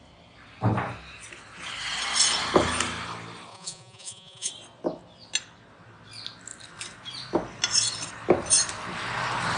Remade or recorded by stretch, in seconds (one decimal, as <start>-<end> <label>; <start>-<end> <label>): 0.0-3.5 recorded; 3.5-4.5 remade; 4.5-9.6 recorded